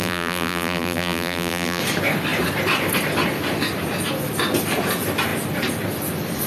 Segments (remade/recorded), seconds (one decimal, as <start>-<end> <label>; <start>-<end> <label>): 0.0-1.8 remade; 1.8-6.5 recorded